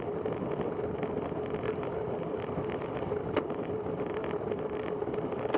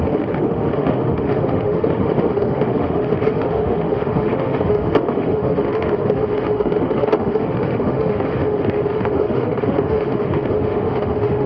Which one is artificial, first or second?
second